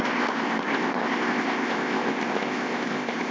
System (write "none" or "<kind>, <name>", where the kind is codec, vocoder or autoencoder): codec, ZipCodec